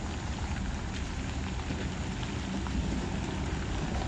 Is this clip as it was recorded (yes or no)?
yes